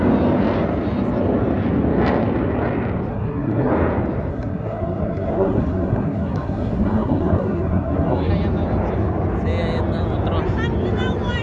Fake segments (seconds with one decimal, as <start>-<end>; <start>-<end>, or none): 3.1-3.7; 4.3-8.3